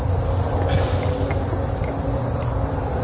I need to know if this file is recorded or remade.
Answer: recorded